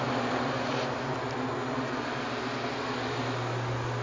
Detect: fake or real real